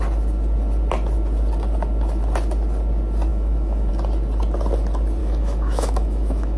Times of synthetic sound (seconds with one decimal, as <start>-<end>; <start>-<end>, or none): 3.3-3.9; 5.2-6.6